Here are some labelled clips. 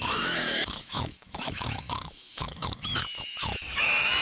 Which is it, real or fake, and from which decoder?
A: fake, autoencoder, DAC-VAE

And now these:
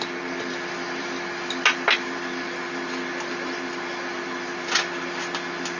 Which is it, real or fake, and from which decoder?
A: real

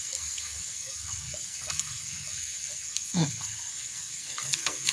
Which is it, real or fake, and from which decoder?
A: fake, codec, SNAC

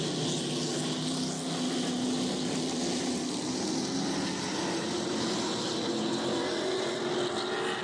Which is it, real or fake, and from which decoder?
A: real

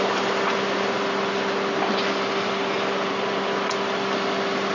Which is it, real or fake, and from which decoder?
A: real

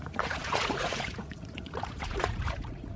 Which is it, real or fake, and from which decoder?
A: fake, vocoder, Vocos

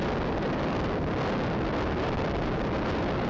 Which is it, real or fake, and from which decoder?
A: real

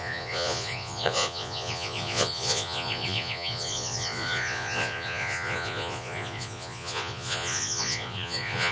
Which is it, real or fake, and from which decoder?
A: fake, vocoder, Vocos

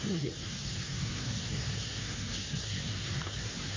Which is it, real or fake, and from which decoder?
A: fake, codec, SNAC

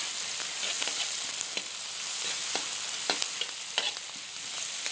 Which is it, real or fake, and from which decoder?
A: real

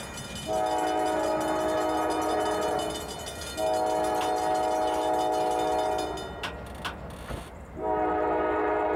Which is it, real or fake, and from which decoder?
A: real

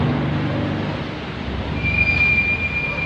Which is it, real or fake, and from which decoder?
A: real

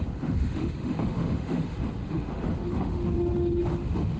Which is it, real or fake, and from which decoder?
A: fake, autoencoder, DAC-VAE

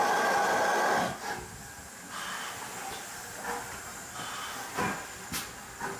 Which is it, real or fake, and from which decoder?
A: real